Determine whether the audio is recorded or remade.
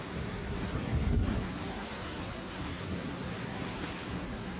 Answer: remade